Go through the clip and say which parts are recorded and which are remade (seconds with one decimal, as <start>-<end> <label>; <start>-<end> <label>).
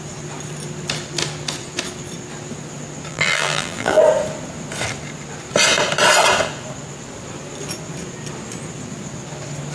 0.0-3.1 recorded; 3.1-4.0 remade; 4.0-9.7 recorded